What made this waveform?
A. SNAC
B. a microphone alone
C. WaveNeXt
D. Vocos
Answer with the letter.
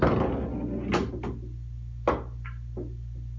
B